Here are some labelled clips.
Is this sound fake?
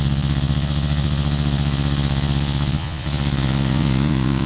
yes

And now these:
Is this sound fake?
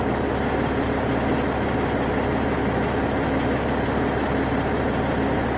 no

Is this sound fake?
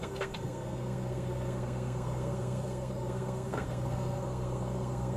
yes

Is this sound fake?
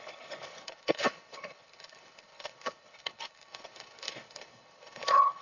yes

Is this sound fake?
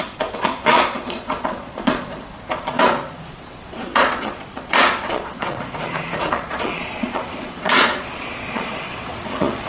yes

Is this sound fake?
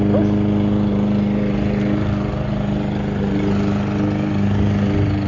no